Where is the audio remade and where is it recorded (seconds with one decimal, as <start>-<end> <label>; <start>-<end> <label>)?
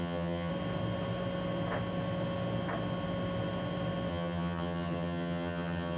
0.0-0.5 remade; 0.5-4.1 recorded; 4.1-6.0 remade